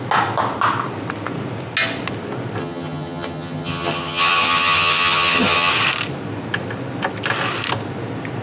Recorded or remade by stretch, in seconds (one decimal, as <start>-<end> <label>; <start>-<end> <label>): 0.0-2.6 recorded; 2.6-5.7 remade; 5.7-8.4 recorded